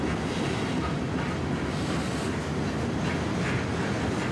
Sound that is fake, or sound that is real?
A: real